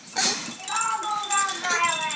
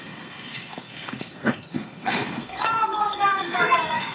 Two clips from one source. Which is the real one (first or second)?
first